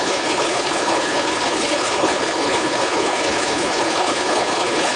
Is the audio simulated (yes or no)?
yes